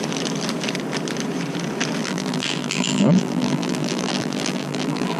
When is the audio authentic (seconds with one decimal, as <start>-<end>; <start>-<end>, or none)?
0.0-2.0